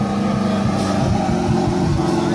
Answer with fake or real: real